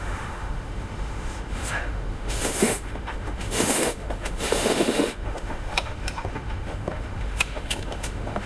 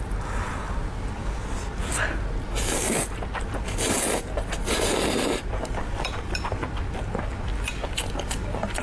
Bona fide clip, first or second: second